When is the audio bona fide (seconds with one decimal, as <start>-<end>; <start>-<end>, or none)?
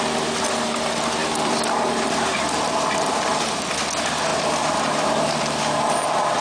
0.0-1.2; 3.2-4.3; 5.4-6.4